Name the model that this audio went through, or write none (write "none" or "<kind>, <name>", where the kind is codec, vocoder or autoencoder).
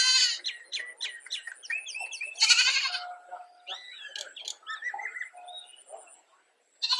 none